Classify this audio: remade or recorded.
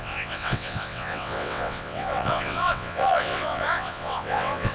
remade